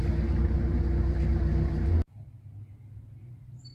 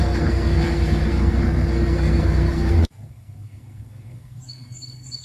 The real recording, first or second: first